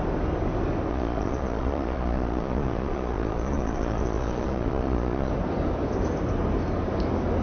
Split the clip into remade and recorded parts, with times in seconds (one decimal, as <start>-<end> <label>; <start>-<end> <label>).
0.0-0.9 recorded; 0.9-5.3 remade; 5.3-7.4 recorded